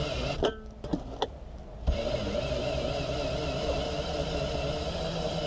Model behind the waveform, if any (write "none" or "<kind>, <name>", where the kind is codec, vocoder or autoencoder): none